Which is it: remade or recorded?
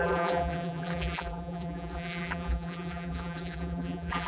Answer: remade